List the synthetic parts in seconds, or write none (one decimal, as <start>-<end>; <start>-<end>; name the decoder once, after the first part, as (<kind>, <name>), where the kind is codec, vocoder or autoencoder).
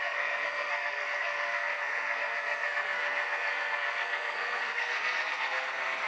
0.0-6.1 (codec, SNAC)